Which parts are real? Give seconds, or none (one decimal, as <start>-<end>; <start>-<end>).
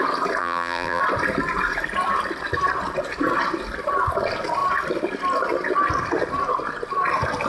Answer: 0.0-0.4; 1.0-7.5